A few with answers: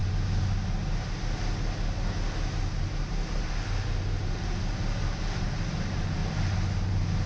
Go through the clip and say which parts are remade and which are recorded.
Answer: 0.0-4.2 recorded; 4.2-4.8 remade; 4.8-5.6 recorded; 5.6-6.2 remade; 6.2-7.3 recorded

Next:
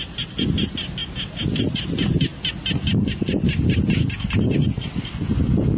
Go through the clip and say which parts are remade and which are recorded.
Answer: 0.0-5.8 recorded

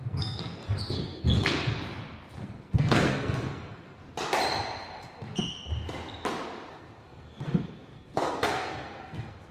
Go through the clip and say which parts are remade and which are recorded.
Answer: 0.0-1.9 remade; 1.9-2.4 recorded; 2.4-4.0 remade; 4.0-6.7 recorded; 6.7-9.5 remade